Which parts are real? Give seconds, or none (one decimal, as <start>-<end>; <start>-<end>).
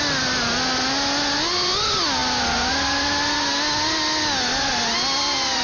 0.0-5.6